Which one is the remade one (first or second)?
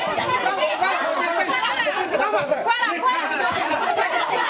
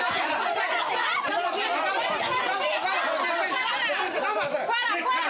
first